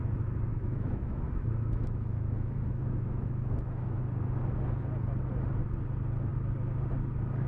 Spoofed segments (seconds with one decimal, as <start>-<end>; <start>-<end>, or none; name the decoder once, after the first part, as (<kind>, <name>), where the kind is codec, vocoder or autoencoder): 0.5-4.0 (autoencoder, DAC-VAE)